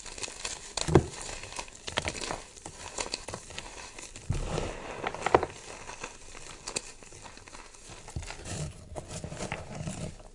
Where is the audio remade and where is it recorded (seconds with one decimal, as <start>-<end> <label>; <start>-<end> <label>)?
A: 0.0-0.8 recorded; 0.8-5.5 remade; 5.5-10.3 recorded